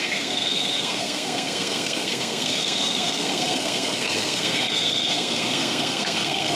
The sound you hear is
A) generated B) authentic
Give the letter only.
A